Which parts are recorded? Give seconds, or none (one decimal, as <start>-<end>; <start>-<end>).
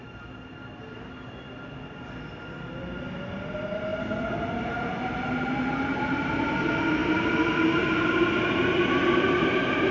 0.0-9.9